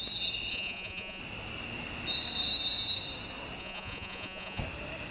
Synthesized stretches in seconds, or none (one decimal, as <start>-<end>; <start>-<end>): 0.5-1.2; 3.6-4.6